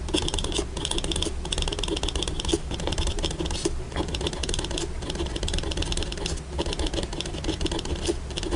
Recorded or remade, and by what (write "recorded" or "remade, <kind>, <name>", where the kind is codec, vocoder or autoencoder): recorded